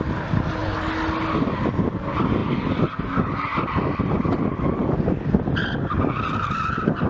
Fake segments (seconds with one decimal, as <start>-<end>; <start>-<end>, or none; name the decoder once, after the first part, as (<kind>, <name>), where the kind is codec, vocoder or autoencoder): none